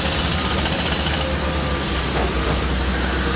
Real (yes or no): yes